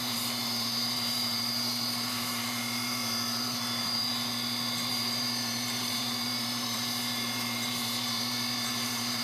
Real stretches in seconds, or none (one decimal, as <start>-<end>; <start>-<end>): 4.1-4.9